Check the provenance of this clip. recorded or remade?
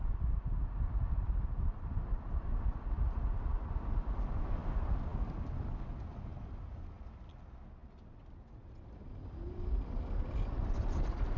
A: recorded